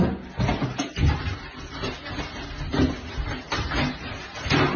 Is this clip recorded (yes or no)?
yes